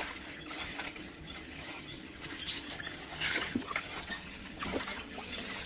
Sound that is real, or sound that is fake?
fake